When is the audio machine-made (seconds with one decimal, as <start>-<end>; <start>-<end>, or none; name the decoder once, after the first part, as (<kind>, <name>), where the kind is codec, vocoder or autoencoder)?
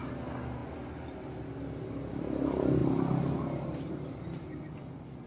none